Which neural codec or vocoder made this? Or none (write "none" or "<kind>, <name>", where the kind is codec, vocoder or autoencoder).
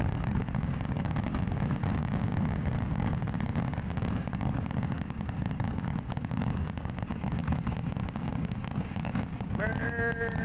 codec, DAC